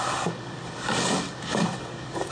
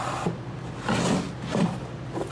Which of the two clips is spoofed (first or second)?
first